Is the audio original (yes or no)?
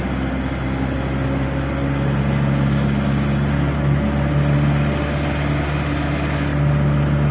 yes